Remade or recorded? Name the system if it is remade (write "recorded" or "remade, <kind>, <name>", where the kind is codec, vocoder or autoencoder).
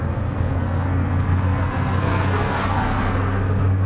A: remade, codec, SNAC